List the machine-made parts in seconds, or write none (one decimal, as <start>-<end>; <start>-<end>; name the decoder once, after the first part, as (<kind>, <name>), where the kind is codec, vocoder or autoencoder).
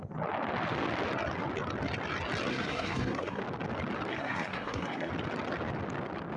2.5-3.4 (codec, SNAC); 4.1-5.1